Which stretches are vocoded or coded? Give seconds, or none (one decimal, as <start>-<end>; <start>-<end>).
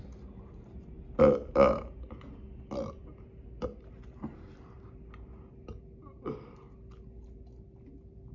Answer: none